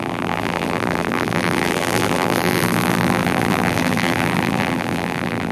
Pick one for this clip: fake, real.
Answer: fake